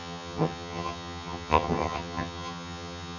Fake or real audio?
fake